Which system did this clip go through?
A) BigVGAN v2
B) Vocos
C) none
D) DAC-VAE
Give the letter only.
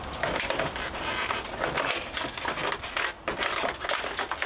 C